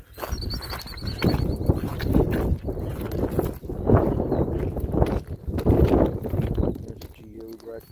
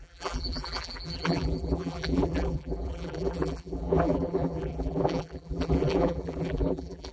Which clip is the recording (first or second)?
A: first